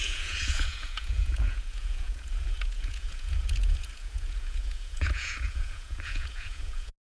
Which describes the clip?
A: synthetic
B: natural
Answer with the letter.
A